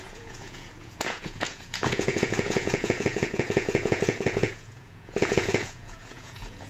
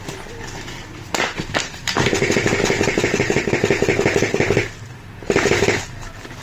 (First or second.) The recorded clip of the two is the second